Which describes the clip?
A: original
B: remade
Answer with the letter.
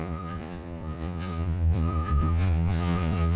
B